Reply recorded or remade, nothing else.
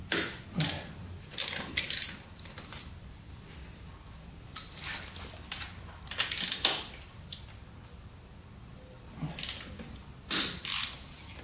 recorded